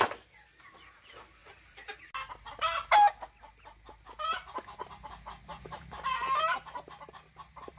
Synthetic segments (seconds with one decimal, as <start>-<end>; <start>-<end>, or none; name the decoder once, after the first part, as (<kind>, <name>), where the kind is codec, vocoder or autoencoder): 1.4-2.0 (vocoder, BigVGAN v2)

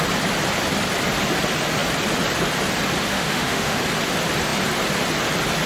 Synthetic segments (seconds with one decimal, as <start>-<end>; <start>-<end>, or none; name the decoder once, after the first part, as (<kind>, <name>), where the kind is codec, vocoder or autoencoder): 3.1-3.8 (autoencoder, DAC-VAE)

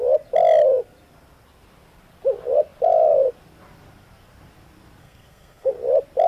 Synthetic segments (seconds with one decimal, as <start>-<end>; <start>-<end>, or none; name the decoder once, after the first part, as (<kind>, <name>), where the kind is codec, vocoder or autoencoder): 5.0-5.7 (codec, SNAC)

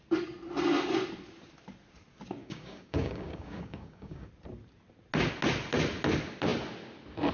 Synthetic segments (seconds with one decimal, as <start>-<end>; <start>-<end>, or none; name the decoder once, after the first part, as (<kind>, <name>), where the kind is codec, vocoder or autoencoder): 2.4-4.3 (codec, DAC)